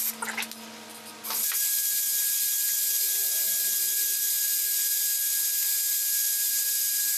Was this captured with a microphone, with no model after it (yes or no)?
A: yes